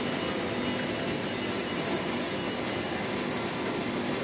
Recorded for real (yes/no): yes